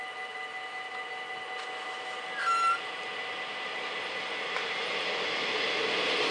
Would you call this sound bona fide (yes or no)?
yes